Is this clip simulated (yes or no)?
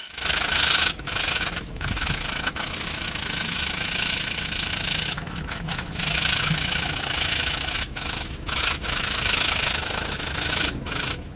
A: yes